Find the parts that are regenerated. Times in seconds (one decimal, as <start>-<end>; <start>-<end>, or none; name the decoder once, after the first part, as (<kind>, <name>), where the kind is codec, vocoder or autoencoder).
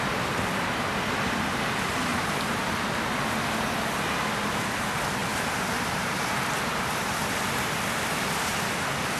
2.1-3.0 (vocoder, BigVGAN v2); 5.2-7.2